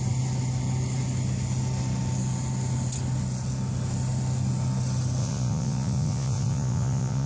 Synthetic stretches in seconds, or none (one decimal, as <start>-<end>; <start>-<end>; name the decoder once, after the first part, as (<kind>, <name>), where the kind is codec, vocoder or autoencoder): 5.2-7.3 (vocoder, Vocos)